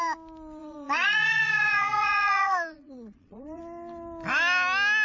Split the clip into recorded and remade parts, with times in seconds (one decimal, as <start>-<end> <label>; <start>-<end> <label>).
0.0-0.6 recorded; 0.6-3.6 remade; 3.6-5.0 recorded